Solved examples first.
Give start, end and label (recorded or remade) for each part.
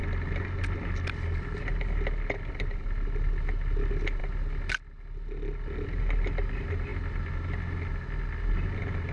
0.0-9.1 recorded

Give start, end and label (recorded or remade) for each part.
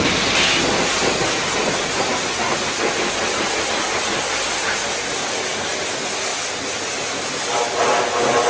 0.0-8.5 recorded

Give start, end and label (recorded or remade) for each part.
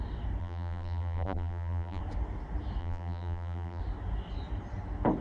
0.0-0.4 recorded; 0.4-2.0 remade; 2.0-2.8 recorded; 2.8-3.8 remade; 3.8-5.2 recorded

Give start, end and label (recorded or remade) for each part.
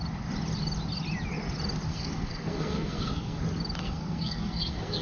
0.0-1.9 recorded; 1.9-3.4 remade; 3.4-3.8 recorded; 3.8-5.0 remade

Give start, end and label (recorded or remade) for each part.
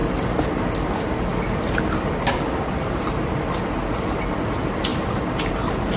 0.0-6.0 recorded